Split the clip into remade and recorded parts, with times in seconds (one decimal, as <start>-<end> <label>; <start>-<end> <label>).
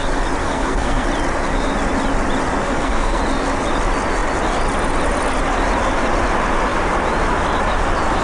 0.0-0.4 recorded; 0.4-1.1 remade; 1.1-2.6 recorded; 2.6-3.2 remade; 3.2-8.2 recorded